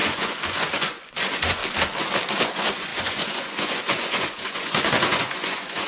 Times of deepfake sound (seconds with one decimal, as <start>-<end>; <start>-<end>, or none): 0.0-1.6; 2.4-5.9